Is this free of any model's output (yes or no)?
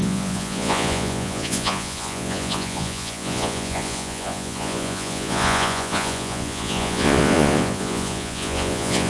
no